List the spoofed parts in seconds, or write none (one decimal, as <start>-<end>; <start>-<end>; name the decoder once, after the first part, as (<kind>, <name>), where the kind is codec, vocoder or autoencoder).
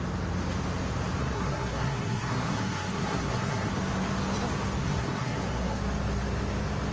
1.2-3.7 (codec, SNAC); 4.8-5.8